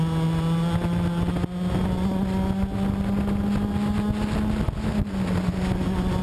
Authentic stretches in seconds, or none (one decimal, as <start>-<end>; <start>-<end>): 0.0-6.2